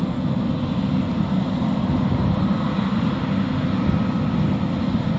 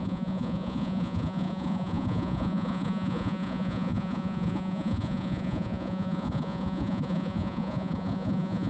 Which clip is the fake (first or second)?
second